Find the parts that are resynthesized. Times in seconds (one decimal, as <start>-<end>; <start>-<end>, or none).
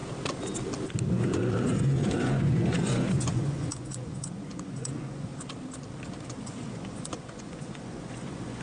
1.1-5.3; 6.3-8.6